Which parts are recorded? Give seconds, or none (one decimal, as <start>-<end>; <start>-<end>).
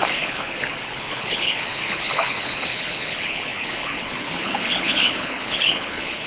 none